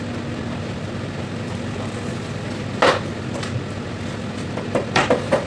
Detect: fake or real fake